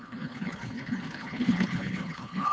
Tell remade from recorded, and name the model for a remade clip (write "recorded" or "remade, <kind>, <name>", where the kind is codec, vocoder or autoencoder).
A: remade, codec, HILCodec